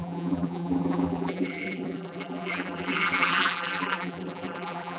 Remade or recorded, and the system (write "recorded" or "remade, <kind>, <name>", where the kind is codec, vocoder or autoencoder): remade, vocoder, BigVGAN v2